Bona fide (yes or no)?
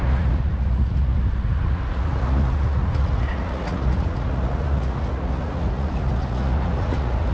no